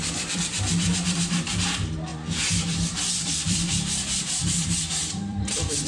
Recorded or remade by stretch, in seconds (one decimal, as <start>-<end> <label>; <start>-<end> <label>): 0.0-1.5 remade; 1.5-2.1 recorded; 2.1-5.9 remade